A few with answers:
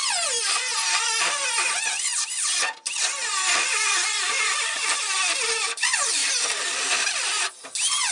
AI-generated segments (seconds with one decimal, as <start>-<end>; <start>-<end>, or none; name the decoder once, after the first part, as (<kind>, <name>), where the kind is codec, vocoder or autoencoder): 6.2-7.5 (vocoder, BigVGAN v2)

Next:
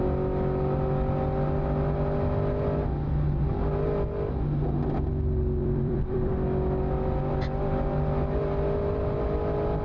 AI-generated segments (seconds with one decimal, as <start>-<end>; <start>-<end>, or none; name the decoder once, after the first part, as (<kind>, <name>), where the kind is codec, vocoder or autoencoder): 5.6-6.3 (vocoder, BigVGAN v2)

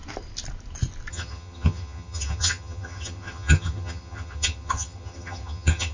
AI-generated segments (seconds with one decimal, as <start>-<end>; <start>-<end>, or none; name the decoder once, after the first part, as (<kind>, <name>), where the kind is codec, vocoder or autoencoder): 1.1-5.9 (vocoder, HiFi-GAN)

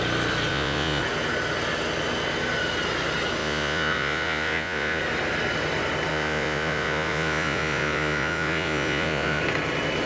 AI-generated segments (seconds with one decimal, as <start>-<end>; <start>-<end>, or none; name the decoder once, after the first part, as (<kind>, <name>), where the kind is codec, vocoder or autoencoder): 0.5-1.0 (vocoder, Vocos); 3.4-5.0; 6.1-9.4